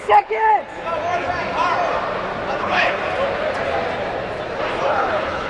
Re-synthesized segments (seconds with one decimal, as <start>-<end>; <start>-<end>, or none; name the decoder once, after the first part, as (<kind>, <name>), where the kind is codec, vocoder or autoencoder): 0.0-0.5 (codec, HILCodec); 2.6-3.0; 4.9-5.5